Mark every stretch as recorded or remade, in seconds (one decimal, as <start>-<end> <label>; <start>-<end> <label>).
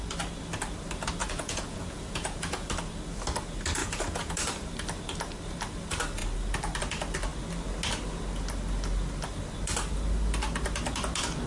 0.0-1.2 recorded; 1.2-2.7 remade; 2.7-3.8 recorded; 3.8-4.3 remade; 4.3-11.5 recorded